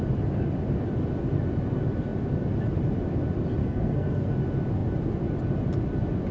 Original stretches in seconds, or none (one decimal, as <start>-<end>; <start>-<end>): 0.0-3.6; 4.3-6.3